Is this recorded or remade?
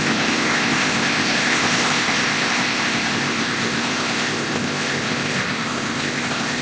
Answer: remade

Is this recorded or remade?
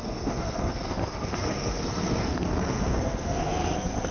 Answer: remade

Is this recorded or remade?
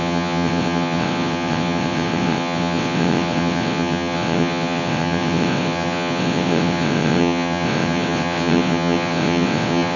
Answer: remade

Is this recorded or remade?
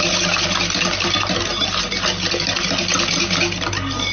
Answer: recorded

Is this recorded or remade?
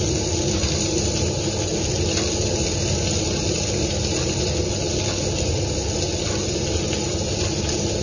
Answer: recorded